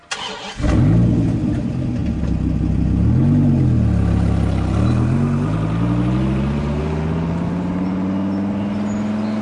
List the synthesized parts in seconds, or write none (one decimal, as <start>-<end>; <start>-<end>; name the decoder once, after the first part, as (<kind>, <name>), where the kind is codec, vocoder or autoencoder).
none